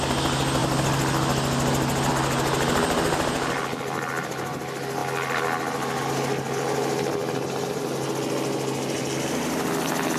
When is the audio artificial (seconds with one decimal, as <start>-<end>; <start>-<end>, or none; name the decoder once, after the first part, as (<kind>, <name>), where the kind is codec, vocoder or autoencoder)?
none